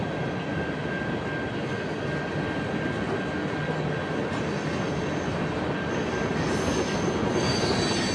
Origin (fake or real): real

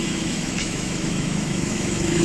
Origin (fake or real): fake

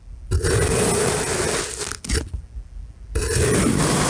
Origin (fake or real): real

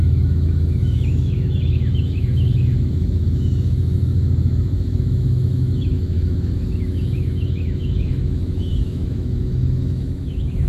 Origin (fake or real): fake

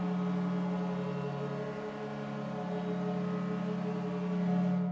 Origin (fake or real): real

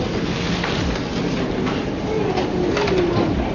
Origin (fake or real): real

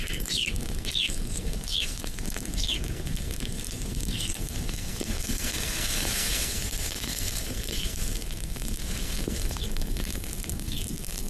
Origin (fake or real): fake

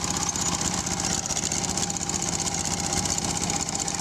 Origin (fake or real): fake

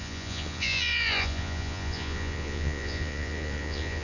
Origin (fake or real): fake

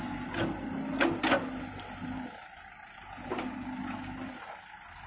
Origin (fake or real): real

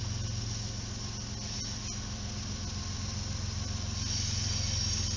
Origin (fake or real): real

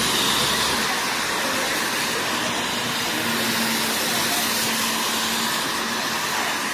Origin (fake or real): real